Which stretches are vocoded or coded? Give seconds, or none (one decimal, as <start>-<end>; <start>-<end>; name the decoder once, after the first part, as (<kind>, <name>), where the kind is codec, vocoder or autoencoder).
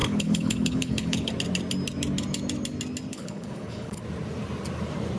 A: 0.0-1.3 (codec, HILCodec); 3.1-4.0